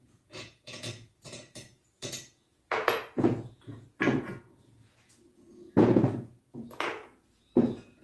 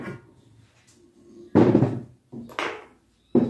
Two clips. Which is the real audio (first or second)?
second